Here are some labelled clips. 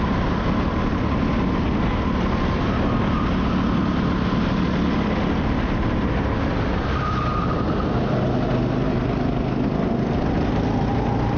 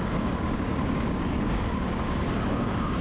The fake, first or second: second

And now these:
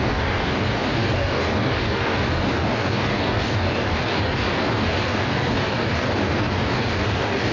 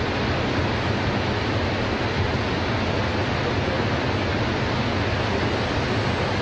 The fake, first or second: first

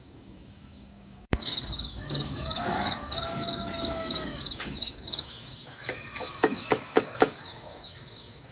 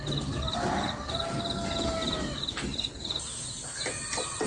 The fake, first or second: first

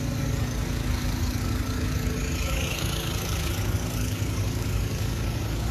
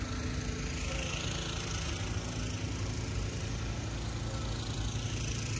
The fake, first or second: first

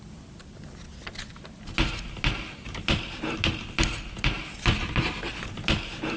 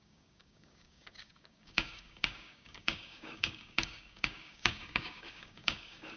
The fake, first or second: second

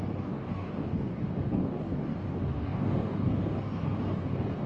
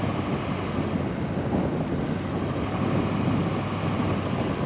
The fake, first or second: first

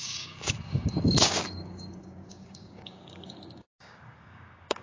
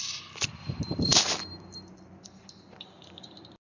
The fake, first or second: first